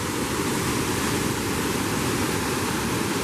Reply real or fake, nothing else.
real